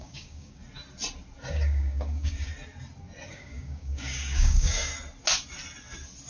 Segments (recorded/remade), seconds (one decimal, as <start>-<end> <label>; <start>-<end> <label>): 0.0-0.6 remade; 0.6-1.5 recorded; 1.5-2.5 remade; 2.5-3.3 recorded; 3.3-4.9 remade; 4.9-6.3 recorded